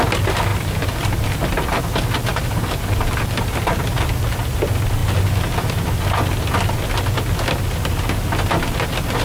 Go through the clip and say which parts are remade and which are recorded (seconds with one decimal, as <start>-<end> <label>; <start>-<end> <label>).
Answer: 0.0-0.5 recorded; 0.5-1.8 remade; 1.8-2.3 recorded; 2.3-3.6 remade; 3.6-9.2 recorded